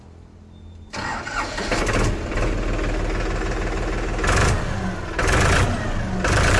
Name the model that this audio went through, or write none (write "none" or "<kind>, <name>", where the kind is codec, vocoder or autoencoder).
none